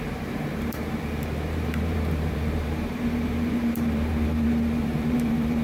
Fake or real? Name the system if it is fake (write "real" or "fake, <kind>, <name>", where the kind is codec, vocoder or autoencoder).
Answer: fake, vocoder, BigVGAN v2